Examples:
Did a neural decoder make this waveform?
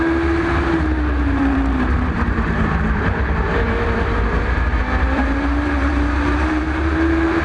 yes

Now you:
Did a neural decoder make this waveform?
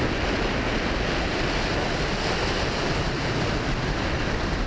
no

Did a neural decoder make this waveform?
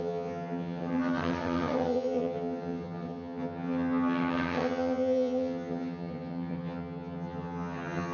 yes